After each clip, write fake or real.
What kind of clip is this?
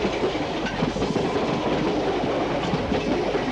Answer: real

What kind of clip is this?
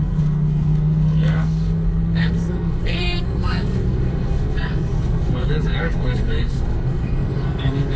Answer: fake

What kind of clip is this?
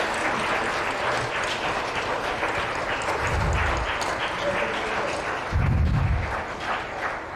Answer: real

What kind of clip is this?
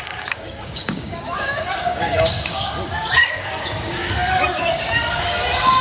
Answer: fake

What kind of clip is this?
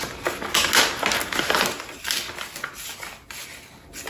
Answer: real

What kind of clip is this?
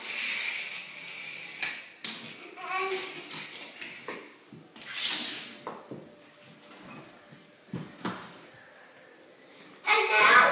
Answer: real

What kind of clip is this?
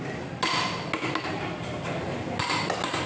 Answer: real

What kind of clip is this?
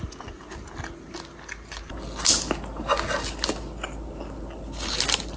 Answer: real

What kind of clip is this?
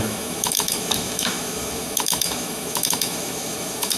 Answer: fake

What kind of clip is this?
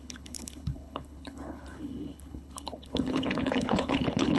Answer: fake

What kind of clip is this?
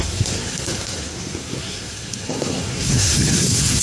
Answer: fake